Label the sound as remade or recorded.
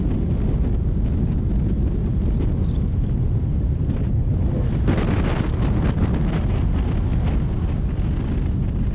recorded